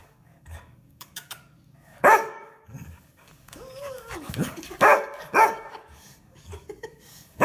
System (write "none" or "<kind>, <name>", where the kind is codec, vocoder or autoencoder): codec, DAC